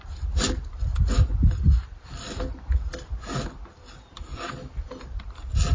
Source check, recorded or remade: recorded